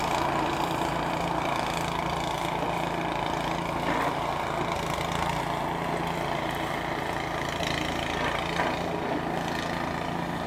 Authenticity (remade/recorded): recorded